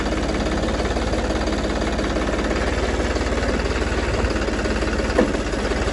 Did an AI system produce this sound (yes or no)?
no